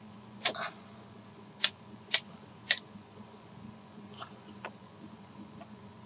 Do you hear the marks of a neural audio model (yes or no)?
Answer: yes